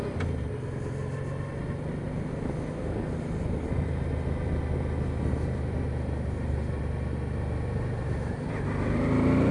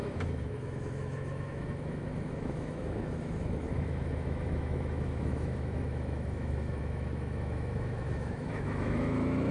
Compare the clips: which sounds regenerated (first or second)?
second